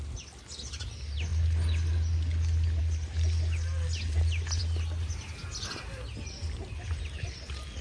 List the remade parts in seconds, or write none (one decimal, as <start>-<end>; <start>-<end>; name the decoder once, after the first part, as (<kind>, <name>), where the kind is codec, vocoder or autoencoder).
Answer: none

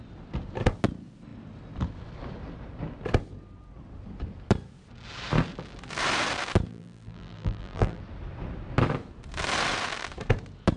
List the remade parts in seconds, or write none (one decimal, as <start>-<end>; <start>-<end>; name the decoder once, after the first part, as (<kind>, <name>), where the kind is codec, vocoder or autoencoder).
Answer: 6.7-8.0 (vocoder, BigVGAN v2)